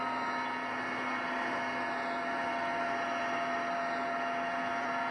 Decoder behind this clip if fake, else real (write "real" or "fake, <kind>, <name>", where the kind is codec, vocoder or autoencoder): real